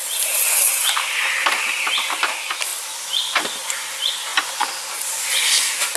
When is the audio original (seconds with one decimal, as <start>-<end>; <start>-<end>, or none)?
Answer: 0.0-6.0